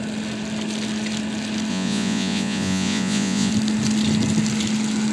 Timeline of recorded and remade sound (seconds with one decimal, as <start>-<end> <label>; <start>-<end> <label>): 0.0-1.7 recorded; 1.7-3.5 remade; 3.5-5.1 recorded